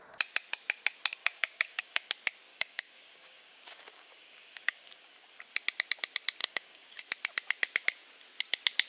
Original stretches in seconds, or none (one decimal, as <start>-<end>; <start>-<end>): 0.0-1.2; 2.1-2.5; 5.5-6.4; 7.0-8.9